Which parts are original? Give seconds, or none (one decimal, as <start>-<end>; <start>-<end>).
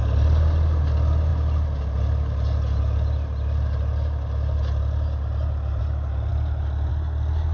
0.0-7.5